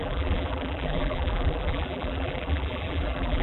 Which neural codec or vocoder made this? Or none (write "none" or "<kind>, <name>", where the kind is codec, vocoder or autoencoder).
vocoder, BigVGAN v2